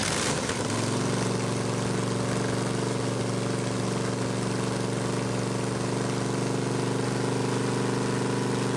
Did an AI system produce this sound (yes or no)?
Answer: no